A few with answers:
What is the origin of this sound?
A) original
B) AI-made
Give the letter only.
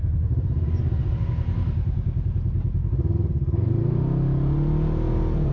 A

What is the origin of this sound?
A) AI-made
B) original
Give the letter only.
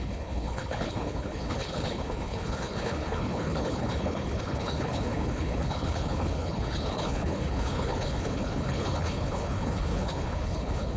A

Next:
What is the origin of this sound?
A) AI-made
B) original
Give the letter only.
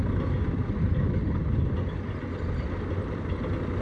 B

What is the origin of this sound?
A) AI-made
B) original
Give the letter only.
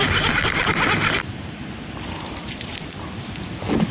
B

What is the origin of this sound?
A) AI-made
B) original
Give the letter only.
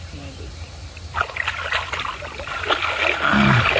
B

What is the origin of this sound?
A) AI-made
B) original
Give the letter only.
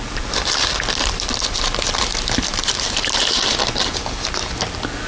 B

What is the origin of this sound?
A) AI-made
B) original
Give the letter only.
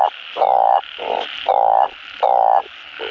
B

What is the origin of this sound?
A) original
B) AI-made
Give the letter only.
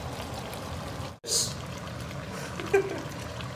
A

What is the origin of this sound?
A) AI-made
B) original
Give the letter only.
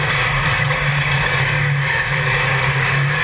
A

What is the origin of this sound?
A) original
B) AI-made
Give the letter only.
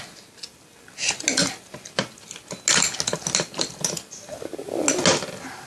A